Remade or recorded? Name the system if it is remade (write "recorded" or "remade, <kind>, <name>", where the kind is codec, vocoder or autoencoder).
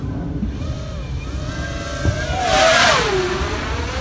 recorded